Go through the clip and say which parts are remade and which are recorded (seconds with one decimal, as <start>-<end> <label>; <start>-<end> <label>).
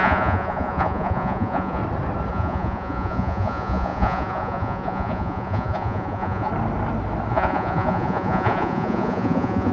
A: 0.0-1.8 remade; 1.8-2.3 recorded; 2.3-6.5 remade; 6.5-7.3 recorded; 7.3-9.7 remade